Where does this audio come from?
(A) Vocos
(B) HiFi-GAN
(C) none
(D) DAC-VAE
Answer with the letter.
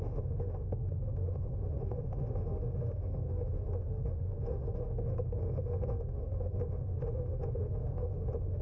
D